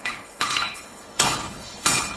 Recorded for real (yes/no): no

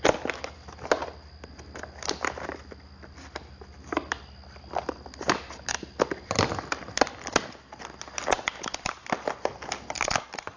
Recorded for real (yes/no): yes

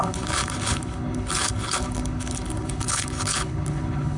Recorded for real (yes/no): no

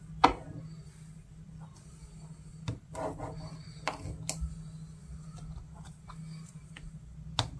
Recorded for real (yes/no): yes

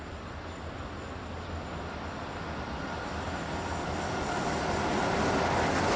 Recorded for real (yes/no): yes